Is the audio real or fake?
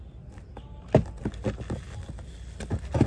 real